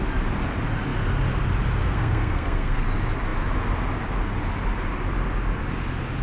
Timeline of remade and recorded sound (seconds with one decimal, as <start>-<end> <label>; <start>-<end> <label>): 0.0-1.8 recorded; 1.8-2.8 remade; 2.8-6.2 recorded